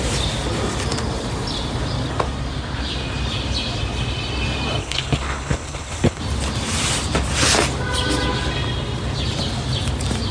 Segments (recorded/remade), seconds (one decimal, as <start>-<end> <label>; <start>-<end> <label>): 0.0-4.8 recorded; 4.8-6.2 remade; 6.2-10.3 recorded